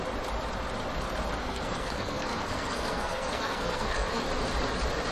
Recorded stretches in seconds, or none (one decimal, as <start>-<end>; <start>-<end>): 0.0-1.4; 4.2-5.1